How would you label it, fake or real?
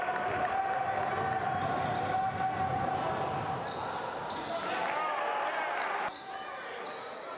real